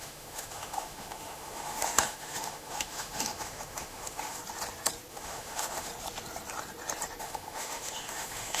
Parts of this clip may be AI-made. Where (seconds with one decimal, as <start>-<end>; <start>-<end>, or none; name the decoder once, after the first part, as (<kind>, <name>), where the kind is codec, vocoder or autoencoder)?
0.0-4.4 (autoencoder, DAC-VAE); 5.1-5.9; 7.2-8.6